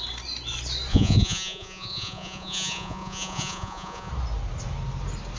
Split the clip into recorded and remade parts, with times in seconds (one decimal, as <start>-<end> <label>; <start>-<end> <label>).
0.0-0.9 recorded; 0.9-4.1 remade; 4.1-5.4 recorded